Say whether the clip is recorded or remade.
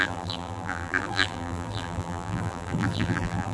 remade